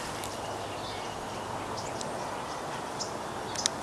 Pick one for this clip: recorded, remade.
recorded